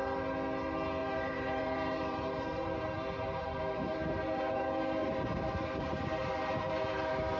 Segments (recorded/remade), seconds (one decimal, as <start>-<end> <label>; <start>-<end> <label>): 0.0-1.0 recorded; 1.0-4.6 remade; 4.6-5.0 recorded; 5.0-6.7 remade; 6.7-7.4 recorded